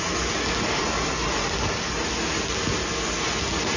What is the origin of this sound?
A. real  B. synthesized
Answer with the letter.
A